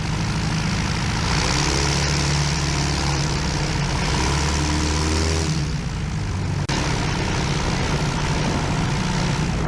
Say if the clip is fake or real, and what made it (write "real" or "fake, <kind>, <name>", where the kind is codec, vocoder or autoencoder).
real